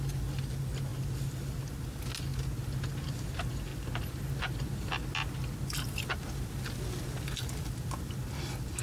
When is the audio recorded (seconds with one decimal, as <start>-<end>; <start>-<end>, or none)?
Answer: 0.0-8.8